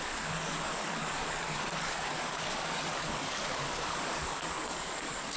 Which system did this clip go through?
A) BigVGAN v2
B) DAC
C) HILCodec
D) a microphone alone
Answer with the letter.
B